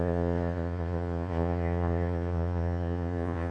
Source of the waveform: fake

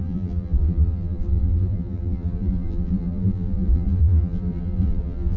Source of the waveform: fake